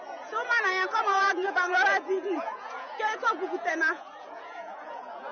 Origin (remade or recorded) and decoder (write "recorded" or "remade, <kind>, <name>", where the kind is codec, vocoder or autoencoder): remade, vocoder, Vocos